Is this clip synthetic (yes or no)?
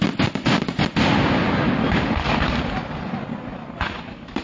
no